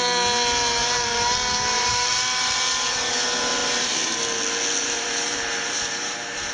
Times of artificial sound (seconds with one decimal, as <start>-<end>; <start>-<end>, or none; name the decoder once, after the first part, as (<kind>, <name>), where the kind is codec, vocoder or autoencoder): 0.8-2.1 (vocoder, BigVGAN v2); 3.6-4.2; 4.8-6.5